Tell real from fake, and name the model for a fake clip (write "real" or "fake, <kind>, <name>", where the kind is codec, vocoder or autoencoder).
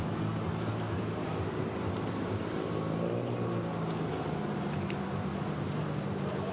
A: real